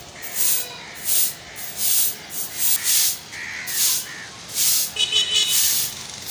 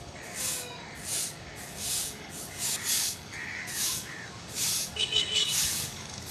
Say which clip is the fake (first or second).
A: second